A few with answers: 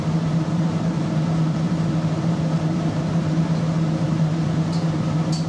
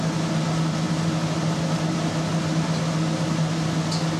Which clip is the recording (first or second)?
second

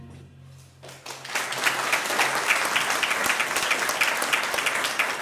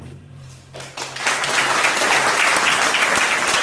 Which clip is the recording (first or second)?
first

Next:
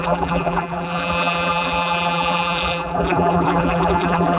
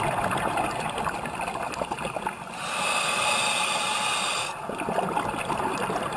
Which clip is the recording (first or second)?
second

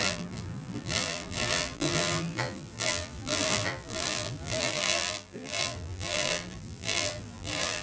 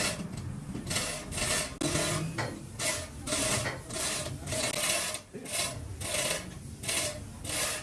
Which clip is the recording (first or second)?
second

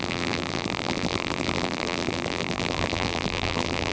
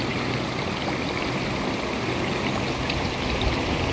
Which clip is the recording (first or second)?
second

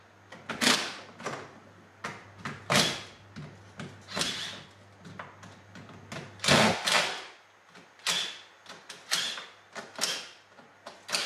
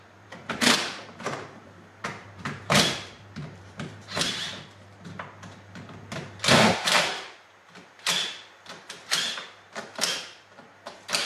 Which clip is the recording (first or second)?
first